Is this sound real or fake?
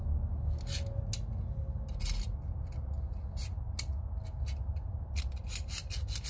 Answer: real